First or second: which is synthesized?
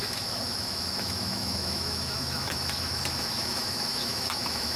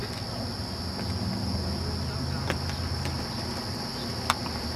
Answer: first